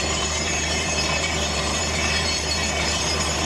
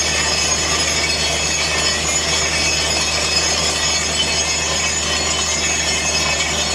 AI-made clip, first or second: first